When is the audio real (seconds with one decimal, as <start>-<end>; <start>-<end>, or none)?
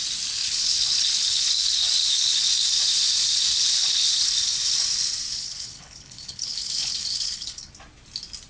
0.0-0.4; 2.5-3.5; 4.3-5.3; 7.7-8.5